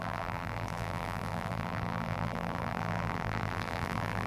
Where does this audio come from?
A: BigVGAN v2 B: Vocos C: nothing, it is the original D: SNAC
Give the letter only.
A